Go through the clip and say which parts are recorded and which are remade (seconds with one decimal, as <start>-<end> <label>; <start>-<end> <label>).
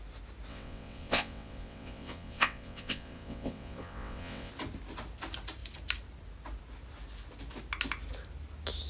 0.0-0.5 recorded; 0.5-4.5 remade; 4.5-8.9 recorded